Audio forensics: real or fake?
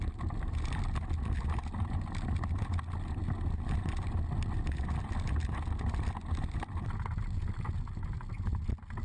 real